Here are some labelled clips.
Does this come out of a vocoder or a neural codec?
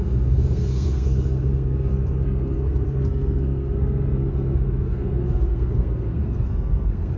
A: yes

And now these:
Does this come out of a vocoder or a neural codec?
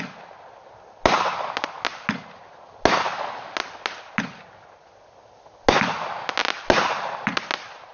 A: no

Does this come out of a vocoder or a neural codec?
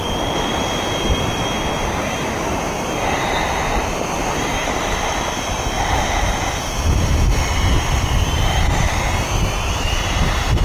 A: yes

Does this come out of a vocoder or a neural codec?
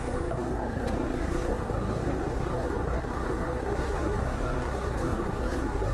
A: yes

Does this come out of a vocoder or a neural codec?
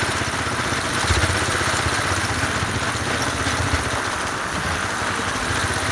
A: no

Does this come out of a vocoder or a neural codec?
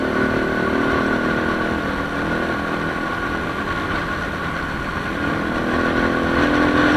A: no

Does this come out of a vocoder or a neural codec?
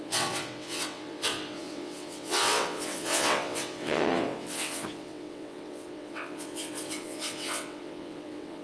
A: yes